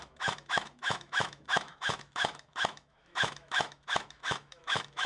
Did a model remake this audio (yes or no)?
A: yes